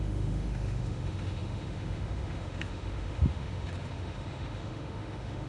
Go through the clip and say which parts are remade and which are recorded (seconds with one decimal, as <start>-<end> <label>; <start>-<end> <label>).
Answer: 0.0-5.5 remade